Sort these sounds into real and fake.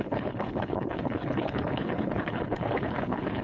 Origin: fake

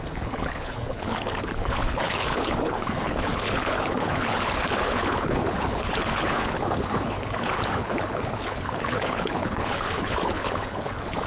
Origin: fake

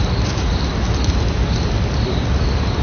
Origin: real